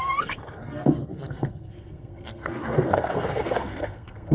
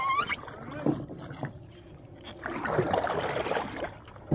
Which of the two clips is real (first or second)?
second